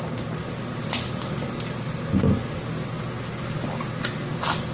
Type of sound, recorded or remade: recorded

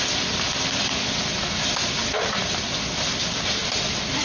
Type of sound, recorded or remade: recorded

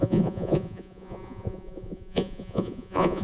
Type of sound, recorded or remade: remade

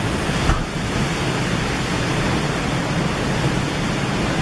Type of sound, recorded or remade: recorded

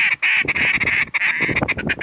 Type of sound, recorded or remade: recorded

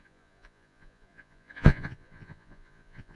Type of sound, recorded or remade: remade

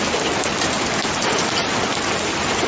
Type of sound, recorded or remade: recorded